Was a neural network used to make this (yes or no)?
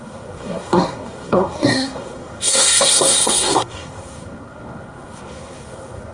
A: yes